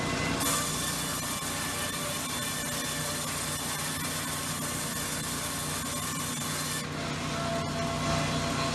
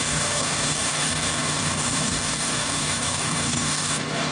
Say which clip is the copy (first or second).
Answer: second